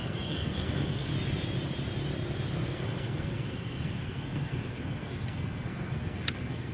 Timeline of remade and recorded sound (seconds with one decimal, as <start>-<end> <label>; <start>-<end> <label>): 0.0-1.1 remade; 1.1-2.7 recorded; 2.7-6.7 remade